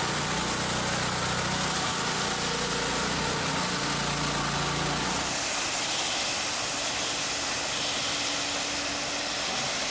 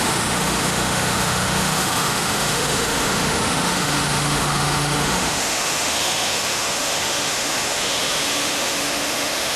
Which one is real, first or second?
first